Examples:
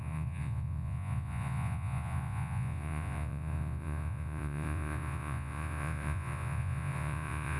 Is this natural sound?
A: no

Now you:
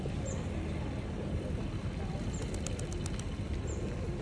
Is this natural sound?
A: yes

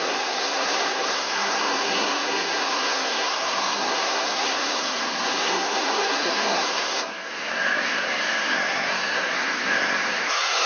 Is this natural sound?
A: no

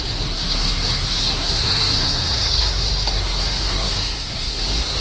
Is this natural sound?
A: no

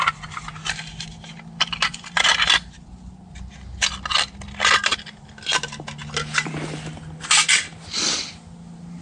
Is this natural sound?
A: yes